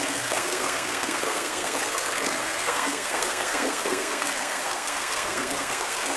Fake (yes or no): yes